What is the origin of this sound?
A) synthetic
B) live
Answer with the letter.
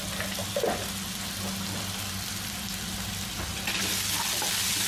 B